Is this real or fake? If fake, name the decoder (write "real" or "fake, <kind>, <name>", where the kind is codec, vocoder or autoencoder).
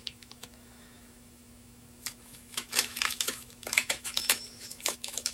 fake, autoencoder, DAC-VAE